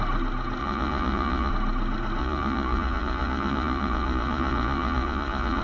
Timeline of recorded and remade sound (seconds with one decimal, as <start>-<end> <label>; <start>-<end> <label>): 0.0-0.6 recorded; 0.6-1.5 remade; 1.5-2.2 recorded; 2.2-5.6 remade